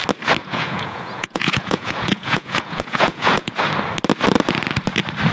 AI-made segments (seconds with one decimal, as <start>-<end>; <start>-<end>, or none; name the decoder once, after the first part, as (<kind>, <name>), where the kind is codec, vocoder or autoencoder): 0.4-3.6 (vocoder, Vocos)